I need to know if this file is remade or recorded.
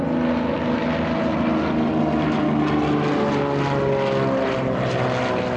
recorded